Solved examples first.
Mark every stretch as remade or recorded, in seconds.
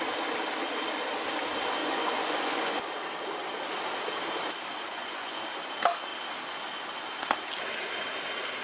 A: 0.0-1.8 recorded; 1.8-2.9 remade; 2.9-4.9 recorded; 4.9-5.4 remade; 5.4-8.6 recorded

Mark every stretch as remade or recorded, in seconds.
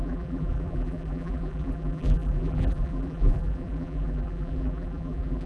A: 0.0-5.5 remade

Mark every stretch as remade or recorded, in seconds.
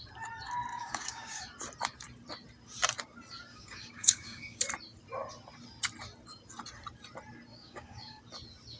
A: 0.0-0.7 recorded; 0.7-1.4 remade; 1.4-3.5 recorded; 3.5-4.6 remade; 4.6-7.5 recorded; 7.5-8.2 remade; 8.2-8.8 recorded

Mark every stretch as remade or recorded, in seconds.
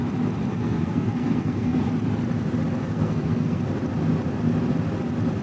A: 0.0-0.5 recorded; 0.5-1.8 remade; 1.8-2.8 recorded; 2.8-3.6 remade; 3.6-5.4 recorded